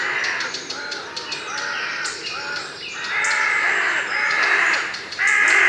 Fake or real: fake